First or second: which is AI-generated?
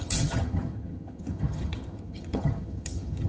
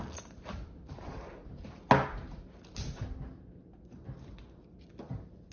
first